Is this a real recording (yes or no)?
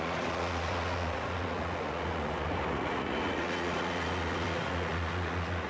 no